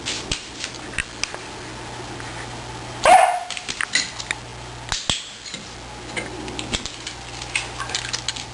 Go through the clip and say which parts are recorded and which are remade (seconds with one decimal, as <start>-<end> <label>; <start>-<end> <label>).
0.0-8.5 recorded